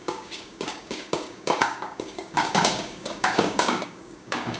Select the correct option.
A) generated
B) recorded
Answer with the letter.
A